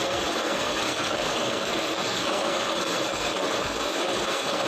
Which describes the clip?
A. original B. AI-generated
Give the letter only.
B